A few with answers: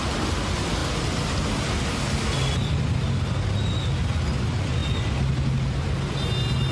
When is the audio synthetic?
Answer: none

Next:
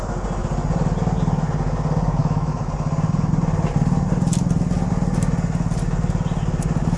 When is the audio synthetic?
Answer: 2.2-2.7 (autoencoder, DAC-VAE)

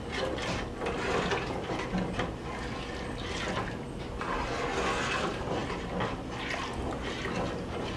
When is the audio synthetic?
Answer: none

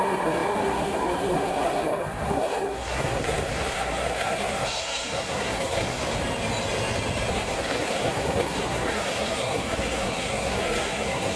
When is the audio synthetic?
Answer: 0.0-6.0 (codec, SNAC); 7.3-11.4

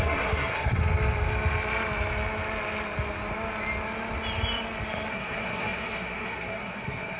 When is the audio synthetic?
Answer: 0.0-0.8 (codec, SNAC); 5.1-7.2

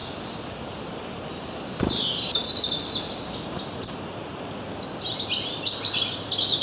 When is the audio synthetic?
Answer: none